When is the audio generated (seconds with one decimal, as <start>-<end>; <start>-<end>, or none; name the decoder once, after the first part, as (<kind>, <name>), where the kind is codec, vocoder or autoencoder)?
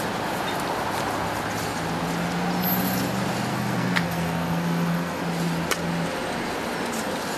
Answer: 3.5-5.2 (codec, SNAC)